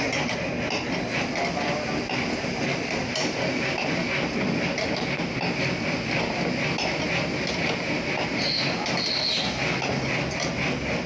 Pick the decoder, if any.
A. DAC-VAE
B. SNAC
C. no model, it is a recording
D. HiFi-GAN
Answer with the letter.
C